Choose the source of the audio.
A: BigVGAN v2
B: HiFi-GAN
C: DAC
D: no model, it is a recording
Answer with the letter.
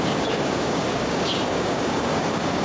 C